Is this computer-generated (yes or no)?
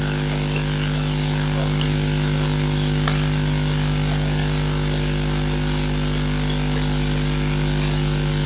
no